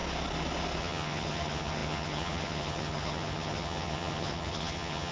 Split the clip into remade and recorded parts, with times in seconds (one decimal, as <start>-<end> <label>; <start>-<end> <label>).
0.0-0.8 recorded; 0.8-5.1 remade